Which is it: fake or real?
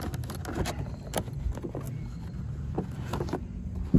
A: real